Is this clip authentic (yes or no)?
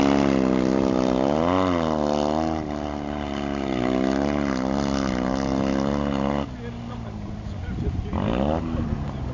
yes